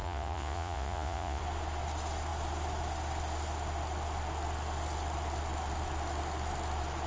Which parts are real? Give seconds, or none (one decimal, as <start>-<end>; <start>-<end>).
1.4-7.1